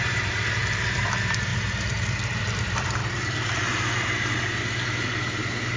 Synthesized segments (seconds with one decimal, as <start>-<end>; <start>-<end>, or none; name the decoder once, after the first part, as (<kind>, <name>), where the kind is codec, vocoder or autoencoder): 0.0-3.0 (vocoder, BigVGAN v2)